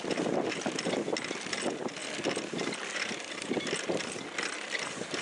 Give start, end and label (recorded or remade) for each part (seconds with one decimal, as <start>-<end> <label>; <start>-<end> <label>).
0.0-5.2 recorded

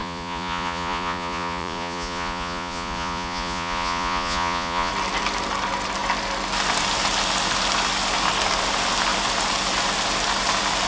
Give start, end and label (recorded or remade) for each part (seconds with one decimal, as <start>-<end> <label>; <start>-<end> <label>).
0.0-4.9 remade; 4.9-10.9 recorded